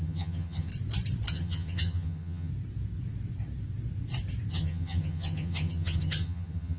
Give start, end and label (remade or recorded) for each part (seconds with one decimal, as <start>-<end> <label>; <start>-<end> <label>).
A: 0.0-0.7 remade; 0.7-1.3 recorded; 1.3-2.5 remade; 2.5-4.5 recorded; 4.5-6.8 remade